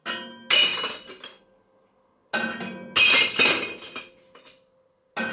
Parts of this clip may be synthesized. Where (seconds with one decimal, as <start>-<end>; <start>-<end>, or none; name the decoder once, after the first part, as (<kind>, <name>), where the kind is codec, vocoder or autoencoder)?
none